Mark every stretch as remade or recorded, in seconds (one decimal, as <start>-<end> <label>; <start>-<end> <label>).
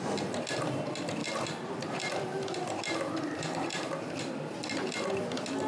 0.0-1.2 recorded; 1.2-4.2 remade; 4.2-5.7 recorded